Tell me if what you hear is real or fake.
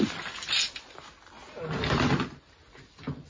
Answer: real